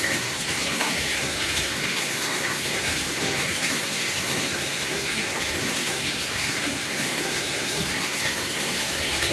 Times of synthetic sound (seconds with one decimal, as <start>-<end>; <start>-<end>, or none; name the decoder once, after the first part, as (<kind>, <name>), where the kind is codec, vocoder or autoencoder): 0.0-9.3 (codec, SNAC)